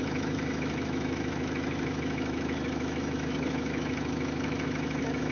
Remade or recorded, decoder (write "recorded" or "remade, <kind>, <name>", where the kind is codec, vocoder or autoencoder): remade, autoencoder, DAC-VAE